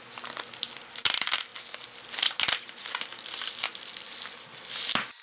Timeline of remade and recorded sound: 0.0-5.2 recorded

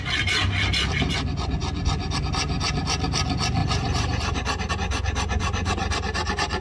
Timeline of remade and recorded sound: 0.0-3.6 recorded; 3.6-4.7 remade; 4.7-6.6 recorded

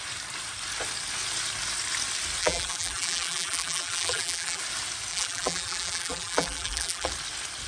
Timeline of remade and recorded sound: 0.0-2.4 recorded; 2.4-4.6 remade; 4.6-5.1 recorded; 5.1-7.1 remade; 7.1-7.7 recorded